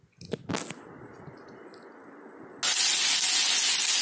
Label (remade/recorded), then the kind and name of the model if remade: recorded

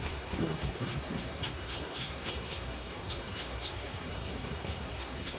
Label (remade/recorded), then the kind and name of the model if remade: remade, codec, SNAC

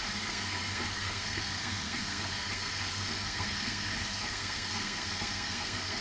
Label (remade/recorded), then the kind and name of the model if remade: remade, codec, SNAC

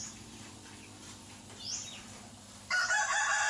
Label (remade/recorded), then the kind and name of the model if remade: recorded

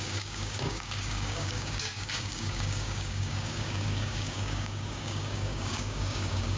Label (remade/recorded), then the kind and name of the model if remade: remade, codec, DAC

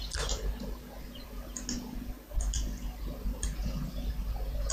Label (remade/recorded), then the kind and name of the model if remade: recorded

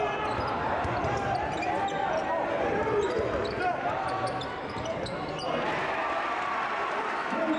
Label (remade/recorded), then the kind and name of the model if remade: recorded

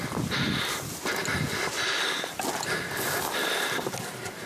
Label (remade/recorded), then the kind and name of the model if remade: recorded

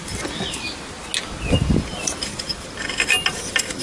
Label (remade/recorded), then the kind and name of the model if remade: recorded